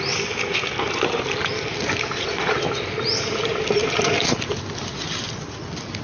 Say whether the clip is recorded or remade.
recorded